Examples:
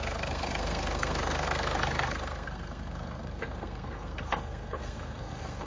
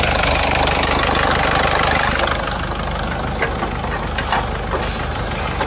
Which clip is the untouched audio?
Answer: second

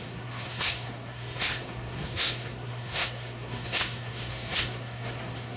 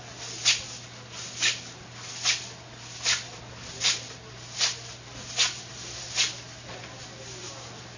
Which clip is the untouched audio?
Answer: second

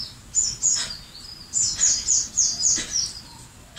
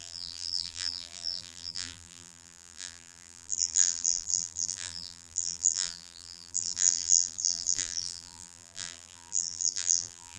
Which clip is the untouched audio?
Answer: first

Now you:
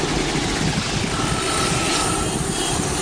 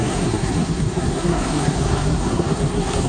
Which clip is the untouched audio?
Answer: first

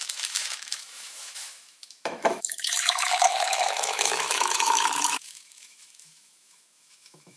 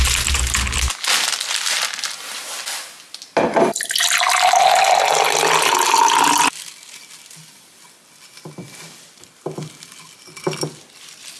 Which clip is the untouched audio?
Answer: second